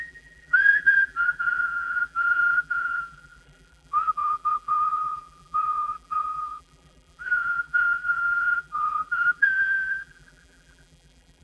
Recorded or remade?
remade